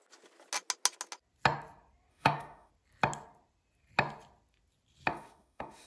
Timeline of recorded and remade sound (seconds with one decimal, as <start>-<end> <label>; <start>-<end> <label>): 0.0-2.1 recorded; 2.1-2.7 remade; 2.7-5.1 recorded; 5.1-5.9 remade